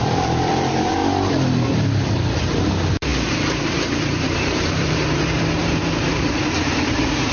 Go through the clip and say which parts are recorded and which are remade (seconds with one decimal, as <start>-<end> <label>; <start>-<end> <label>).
0.0-1.0 remade; 1.0-2.6 recorded; 2.6-7.3 remade